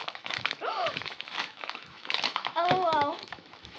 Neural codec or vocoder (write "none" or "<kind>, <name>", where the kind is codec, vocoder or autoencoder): autoencoder, DAC-VAE